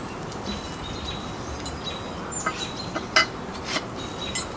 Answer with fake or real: real